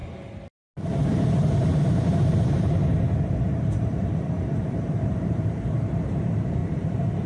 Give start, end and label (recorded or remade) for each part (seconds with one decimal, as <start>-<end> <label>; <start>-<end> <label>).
0.0-1.7 recorded; 1.7-2.8 remade; 2.8-3.5 recorded; 3.5-6.6 remade; 6.6-7.3 recorded